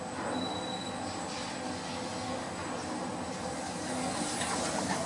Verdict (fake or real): real